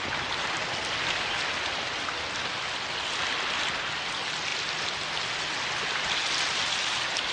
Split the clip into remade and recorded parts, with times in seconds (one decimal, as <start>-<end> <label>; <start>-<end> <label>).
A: 0.0-7.3 recorded